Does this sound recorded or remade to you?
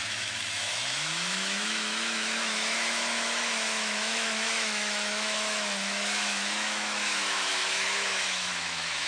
remade